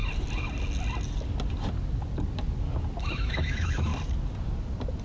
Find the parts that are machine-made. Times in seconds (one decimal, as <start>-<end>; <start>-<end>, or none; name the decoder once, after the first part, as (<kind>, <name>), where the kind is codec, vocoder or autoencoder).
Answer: 3.0-3.9 (autoencoder, DAC-VAE)